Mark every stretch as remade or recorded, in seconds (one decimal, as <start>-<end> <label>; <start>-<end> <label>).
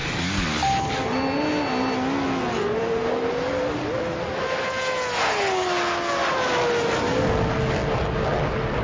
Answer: 0.0-8.8 recorded